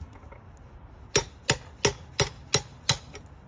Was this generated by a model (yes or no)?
no